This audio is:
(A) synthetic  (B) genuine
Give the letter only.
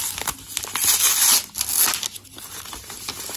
B